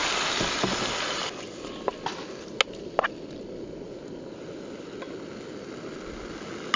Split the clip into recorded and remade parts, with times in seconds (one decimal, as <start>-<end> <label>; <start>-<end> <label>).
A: 0.0-6.8 recorded